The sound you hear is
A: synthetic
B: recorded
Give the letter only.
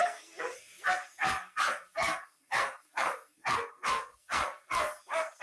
A